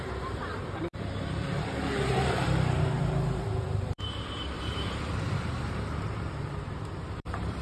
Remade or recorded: remade